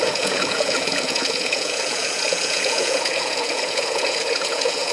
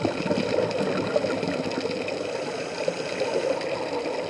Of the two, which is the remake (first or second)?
first